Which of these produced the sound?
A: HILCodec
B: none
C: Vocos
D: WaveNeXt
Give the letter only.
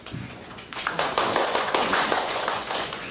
C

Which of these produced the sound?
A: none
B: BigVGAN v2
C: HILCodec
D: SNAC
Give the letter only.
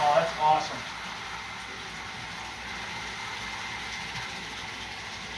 A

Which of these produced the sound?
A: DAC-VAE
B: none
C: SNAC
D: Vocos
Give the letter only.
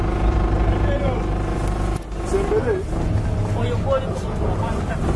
B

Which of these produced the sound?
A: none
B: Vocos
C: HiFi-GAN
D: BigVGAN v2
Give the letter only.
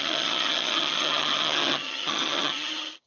C